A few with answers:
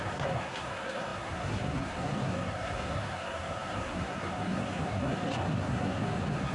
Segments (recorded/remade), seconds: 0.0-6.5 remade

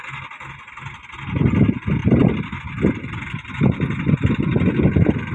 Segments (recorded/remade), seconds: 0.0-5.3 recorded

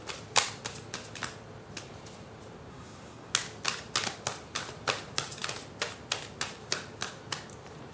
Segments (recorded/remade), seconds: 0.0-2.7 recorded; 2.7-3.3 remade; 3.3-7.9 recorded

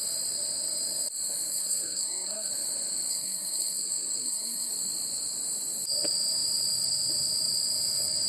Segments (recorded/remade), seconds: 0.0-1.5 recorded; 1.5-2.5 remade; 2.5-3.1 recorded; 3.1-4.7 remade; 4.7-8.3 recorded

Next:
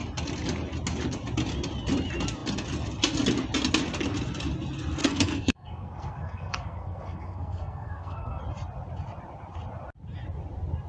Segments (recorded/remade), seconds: 0.0-5.0 recorded; 5.0-8.4 remade; 8.4-10.9 recorded